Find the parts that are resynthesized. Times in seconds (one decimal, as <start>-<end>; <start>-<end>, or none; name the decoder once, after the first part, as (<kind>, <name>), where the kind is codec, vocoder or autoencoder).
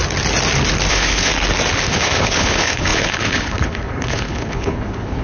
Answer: 0.9-1.3 (codec, HILCodec); 1.9-5.2